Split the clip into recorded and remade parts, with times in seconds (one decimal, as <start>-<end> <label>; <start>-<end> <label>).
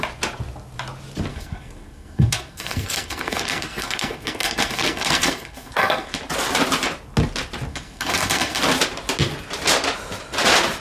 0.0-1.3 recorded; 1.3-6.2 remade; 6.2-7.7 recorded; 7.7-8.6 remade; 8.6-10.8 recorded